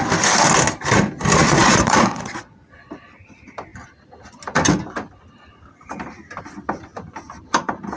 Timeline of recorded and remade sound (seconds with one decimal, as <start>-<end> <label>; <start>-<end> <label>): 0.0-1.4 recorded; 1.4-2.9 remade; 2.9-8.0 recorded